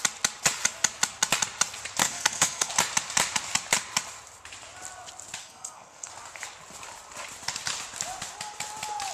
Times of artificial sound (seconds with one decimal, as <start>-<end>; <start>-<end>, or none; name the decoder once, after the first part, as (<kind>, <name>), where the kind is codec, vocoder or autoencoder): 2.0-2.7 (codec, SNAC); 5.4-6.1